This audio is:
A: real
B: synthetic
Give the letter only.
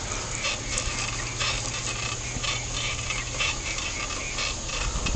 A